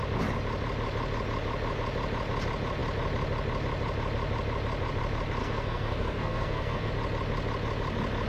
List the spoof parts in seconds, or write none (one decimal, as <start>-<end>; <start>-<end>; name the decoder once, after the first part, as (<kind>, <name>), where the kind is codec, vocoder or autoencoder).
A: 5.4-6.9 (codec, SNAC)